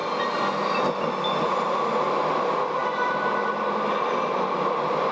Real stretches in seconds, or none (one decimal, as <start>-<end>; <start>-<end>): 0.0-5.1